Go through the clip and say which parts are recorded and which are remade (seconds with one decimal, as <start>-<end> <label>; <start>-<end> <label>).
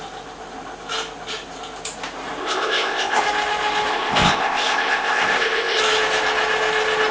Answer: 0.0-2.4 recorded; 2.4-3.2 remade; 3.2-3.9 recorded; 3.9-5.8 remade; 5.8-7.1 recorded